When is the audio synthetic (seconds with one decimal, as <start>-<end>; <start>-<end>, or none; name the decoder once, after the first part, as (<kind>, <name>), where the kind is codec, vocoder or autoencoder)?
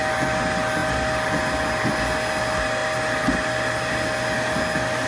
none